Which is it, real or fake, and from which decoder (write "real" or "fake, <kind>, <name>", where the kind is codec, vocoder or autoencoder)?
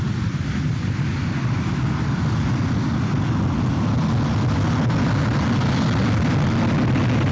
real